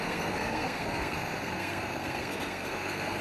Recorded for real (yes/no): no